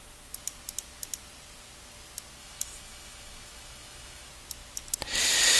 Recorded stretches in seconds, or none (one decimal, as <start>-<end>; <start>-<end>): 0.0-2.4; 4.3-5.6